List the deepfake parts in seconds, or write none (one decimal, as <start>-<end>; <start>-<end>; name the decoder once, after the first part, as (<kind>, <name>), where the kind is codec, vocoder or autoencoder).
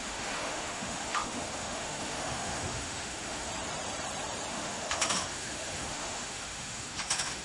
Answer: 0.0-3.5 (autoencoder, DAC-VAE); 4.5-7.4